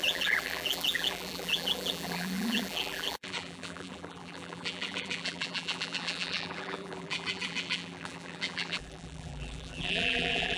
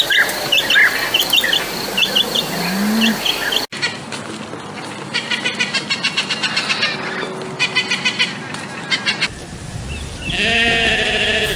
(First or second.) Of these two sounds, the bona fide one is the second